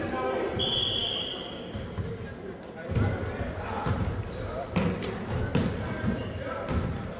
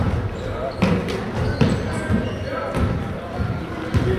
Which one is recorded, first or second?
second